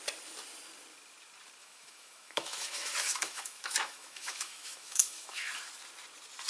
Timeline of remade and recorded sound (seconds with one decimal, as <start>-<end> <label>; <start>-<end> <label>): 0.0-1.6 recorded; 1.6-5.5 remade; 5.5-6.5 recorded

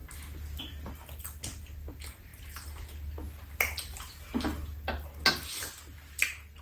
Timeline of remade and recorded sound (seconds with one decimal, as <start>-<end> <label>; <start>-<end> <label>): 0.0-6.6 recorded